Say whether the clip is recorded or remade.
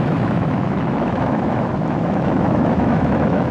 remade